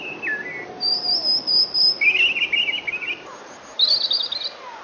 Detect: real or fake real